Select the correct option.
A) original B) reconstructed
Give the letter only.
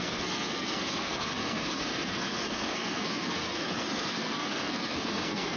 B